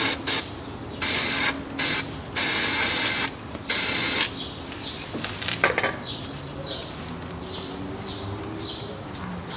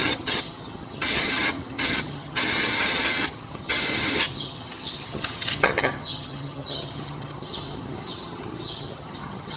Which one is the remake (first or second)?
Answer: second